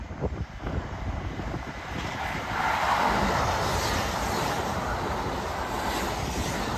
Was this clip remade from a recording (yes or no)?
no